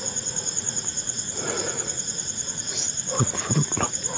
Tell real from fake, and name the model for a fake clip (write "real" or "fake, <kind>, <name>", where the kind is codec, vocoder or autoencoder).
fake, vocoder, Vocos